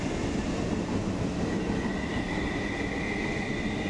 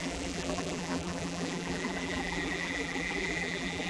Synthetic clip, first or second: second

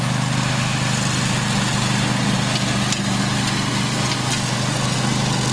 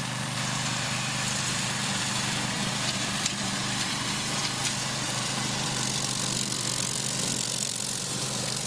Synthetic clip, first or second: second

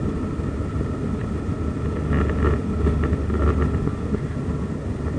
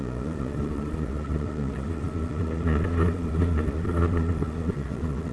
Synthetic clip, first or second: second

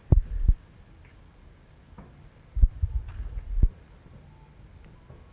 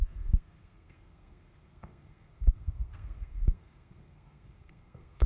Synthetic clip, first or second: second